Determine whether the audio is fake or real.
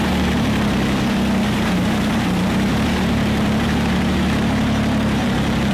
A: fake